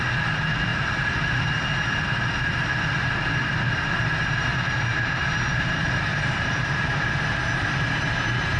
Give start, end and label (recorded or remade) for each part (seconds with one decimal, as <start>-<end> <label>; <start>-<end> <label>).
0.0-0.7 recorded; 0.7-1.5 remade; 1.5-4.5 recorded; 4.5-7.1 remade; 7.1-8.6 recorded